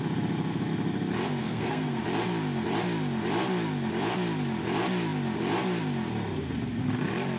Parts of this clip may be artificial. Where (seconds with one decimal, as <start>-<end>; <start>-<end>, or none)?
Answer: 1.4-2.0